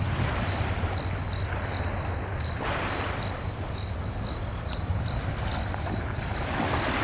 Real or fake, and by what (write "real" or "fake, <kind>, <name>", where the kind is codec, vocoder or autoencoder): real